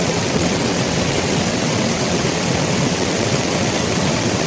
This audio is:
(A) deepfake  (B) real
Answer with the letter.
A